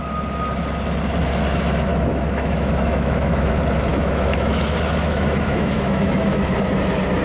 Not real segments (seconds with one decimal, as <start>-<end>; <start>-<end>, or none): 1.9-3.5; 3.9-4.6; 5.0-6.5